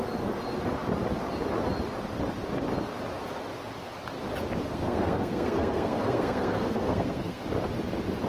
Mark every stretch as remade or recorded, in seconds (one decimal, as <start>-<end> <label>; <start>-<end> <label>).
0.0-4.7 recorded; 4.7-7.4 remade; 7.4-8.3 recorded